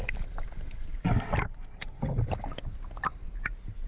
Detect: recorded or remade recorded